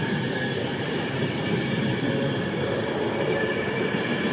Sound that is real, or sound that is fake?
fake